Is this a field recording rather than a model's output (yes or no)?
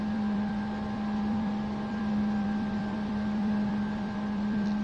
no